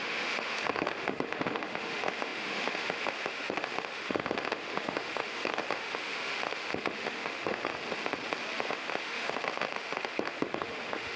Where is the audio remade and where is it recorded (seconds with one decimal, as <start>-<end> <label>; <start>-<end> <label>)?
0.0-7.7 remade; 7.7-8.7 recorded; 8.7-11.2 remade